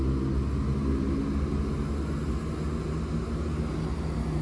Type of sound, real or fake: real